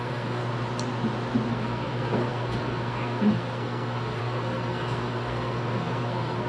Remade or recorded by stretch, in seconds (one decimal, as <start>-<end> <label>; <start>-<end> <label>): 0.0-0.4 remade; 0.4-1.5 recorded; 1.5-6.5 remade